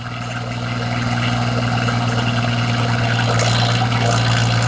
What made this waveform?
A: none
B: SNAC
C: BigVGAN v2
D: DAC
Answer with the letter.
A